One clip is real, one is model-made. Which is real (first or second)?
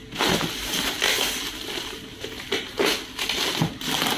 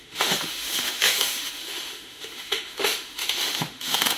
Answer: first